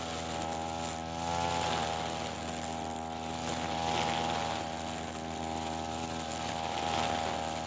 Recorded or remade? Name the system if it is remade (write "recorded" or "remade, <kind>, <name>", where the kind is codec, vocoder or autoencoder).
recorded